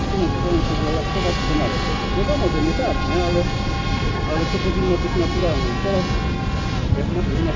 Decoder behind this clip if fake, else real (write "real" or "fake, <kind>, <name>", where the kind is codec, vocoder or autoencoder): real